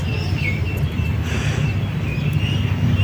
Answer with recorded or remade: recorded